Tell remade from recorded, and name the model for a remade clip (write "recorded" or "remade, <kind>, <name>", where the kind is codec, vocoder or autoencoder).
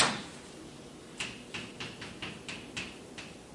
recorded